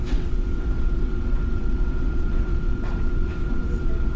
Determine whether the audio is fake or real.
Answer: fake